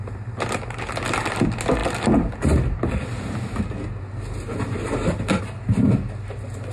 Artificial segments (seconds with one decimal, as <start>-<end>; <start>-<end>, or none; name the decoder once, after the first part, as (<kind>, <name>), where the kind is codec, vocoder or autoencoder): none